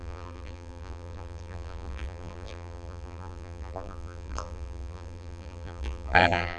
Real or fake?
fake